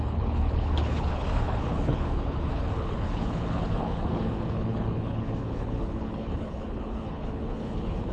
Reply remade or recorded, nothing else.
remade